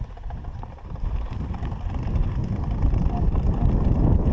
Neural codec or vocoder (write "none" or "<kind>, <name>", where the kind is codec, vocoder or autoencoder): none